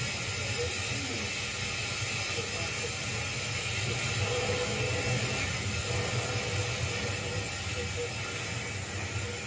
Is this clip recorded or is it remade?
recorded